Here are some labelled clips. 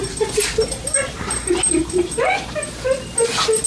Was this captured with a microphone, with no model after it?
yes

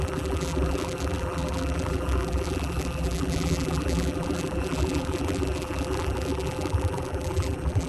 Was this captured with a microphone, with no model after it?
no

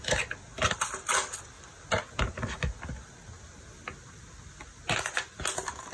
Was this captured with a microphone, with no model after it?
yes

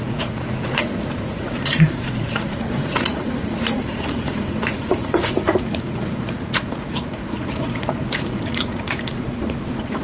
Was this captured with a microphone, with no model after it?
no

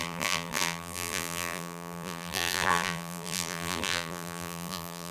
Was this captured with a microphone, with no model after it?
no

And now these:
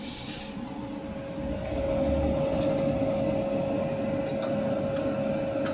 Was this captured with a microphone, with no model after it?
yes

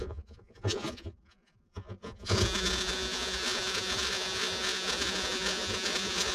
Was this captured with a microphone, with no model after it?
no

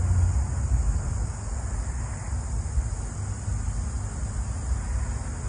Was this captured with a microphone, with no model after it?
yes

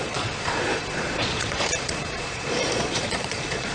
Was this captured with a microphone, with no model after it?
no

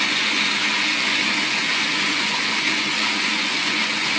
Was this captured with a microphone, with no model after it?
no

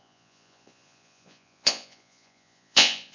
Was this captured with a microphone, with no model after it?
no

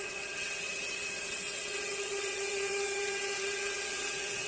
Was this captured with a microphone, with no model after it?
no